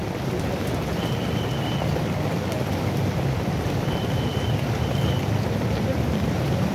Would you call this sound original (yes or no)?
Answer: no